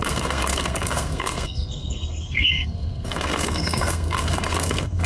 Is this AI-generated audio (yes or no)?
yes